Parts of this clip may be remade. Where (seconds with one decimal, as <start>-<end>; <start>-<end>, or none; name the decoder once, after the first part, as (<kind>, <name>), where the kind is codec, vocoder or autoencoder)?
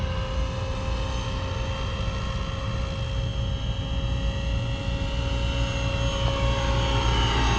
none